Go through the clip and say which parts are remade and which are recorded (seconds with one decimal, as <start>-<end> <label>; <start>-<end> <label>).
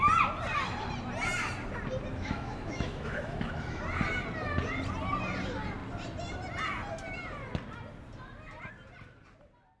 0.0-2.1 recorded; 2.1-3.8 remade; 3.8-9.8 recorded